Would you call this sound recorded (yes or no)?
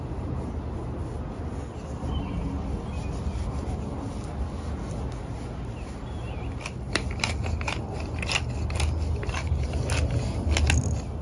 yes